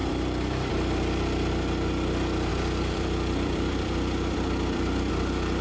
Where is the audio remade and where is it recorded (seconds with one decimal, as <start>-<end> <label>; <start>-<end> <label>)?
0.0-0.7 remade; 0.7-2.5 recorded; 2.5-5.1 remade; 5.1-5.6 recorded